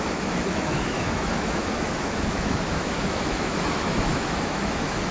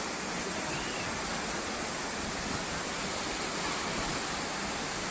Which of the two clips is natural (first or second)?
second